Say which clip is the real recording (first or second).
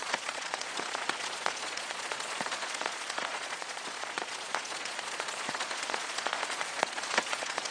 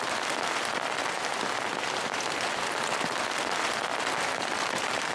second